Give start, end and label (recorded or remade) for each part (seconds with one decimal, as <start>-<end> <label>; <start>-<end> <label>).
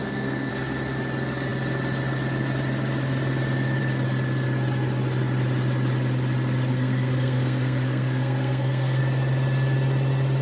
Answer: 0.0-0.5 remade; 0.5-6.7 recorded; 6.7-9.0 remade; 9.0-10.4 recorded